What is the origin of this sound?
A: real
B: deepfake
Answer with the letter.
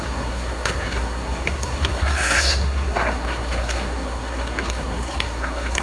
B